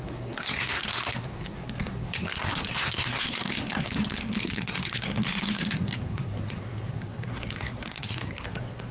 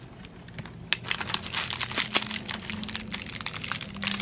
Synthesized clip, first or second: first